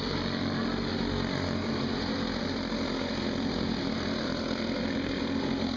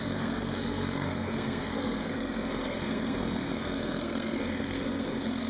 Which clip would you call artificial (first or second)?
second